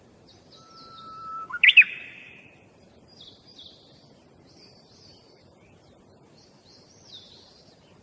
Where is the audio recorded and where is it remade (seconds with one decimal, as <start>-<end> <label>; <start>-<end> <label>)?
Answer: 0.0-1.4 recorded; 1.4-1.9 remade; 1.9-8.0 recorded

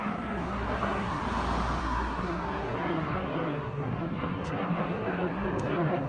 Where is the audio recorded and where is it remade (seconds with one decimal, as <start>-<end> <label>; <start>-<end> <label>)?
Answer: 0.0-1.2 remade; 1.2-1.8 recorded; 1.8-6.1 remade

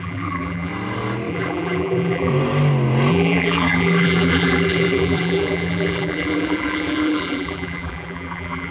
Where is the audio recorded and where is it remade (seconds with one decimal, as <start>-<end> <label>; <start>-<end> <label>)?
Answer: 0.0-0.7 remade; 0.7-1.3 recorded; 1.3-2.3 remade; 2.3-3.1 recorded; 3.1-8.7 remade

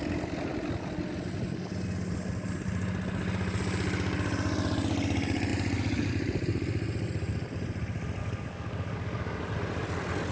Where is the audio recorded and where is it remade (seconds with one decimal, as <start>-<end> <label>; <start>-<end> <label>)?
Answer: 0.0-8.2 recorded; 8.2-9.4 remade; 9.4-10.3 recorded

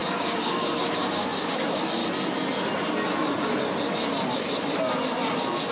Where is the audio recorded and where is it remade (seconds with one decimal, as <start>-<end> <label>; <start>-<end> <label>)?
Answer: 0.0-2.0 remade; 2.0-5.7 recorded

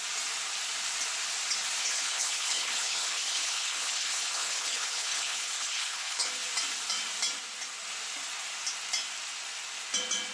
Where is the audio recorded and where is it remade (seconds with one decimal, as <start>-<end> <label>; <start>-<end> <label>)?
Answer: 0.0-1.8 recorded; 1.8-6.3 remade; 6.3-10.3 recorded

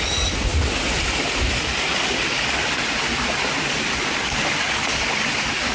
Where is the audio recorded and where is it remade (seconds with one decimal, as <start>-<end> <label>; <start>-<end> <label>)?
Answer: 0.0-5.7 recorded

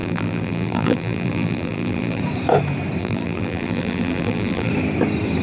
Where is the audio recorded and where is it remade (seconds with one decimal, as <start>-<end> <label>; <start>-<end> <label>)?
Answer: 0.0-2.2 remade; 2.2-3.0 recorded; 3.0-4.7 remade; 4.7-5.4 recorded